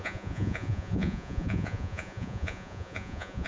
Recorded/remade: remade